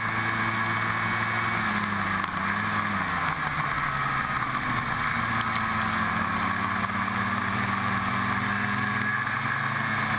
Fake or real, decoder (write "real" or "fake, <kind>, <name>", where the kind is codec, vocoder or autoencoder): real